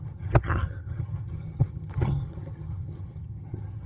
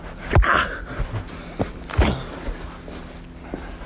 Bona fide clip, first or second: second